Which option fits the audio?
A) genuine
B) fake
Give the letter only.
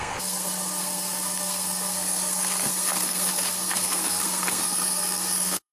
B